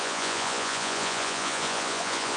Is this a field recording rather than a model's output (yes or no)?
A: no